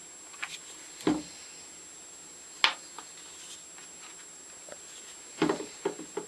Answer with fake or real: real